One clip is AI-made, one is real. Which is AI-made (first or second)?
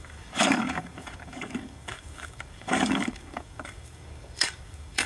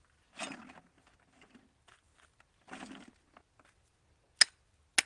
first